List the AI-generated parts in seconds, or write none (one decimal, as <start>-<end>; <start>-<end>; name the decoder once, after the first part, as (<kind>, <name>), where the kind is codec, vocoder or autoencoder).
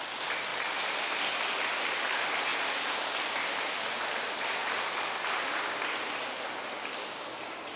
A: none